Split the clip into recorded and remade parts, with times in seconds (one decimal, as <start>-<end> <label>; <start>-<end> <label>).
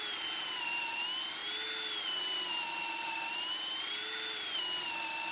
0.0-5.3 recorded